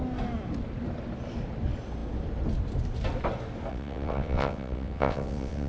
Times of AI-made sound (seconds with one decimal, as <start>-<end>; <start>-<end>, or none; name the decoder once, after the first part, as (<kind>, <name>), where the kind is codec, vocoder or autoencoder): 3.7-5.7 (vocoder, WaveNeXt)